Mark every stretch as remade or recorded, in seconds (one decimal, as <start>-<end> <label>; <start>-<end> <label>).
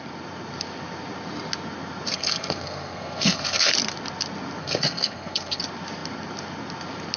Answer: 0.0-2.1 recorded; 2.1-3.7 remade; 3.7-4.6 recorded; 4.6-5.6 remade; 5.6-7.2 recorded